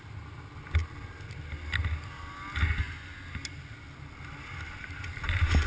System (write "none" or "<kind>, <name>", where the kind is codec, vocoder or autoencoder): none